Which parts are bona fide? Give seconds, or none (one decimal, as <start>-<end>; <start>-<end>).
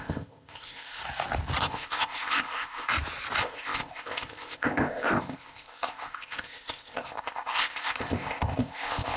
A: 1.0-1.6; 2.9-3.4